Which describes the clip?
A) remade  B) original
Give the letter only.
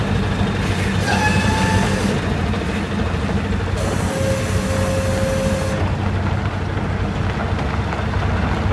B